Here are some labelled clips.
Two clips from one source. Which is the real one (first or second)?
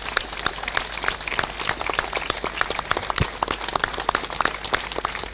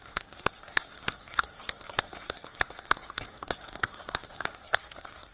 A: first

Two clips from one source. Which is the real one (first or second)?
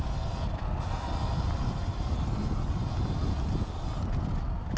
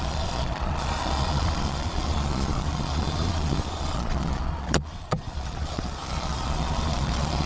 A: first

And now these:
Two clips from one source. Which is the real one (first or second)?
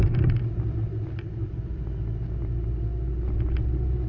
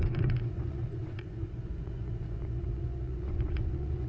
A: first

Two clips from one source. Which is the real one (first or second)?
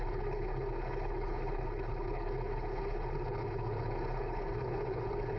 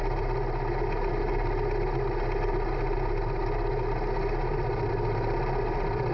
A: second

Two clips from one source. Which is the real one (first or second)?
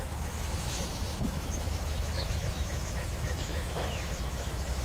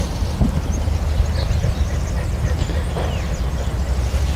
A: second